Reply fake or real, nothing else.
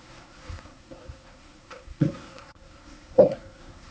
fake